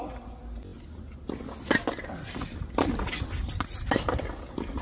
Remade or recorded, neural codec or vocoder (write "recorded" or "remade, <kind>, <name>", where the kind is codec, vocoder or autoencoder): recorded